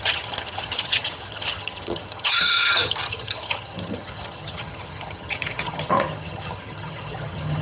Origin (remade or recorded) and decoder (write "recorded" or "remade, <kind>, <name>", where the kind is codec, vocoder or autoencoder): remade, vocoder, HiFi-GAN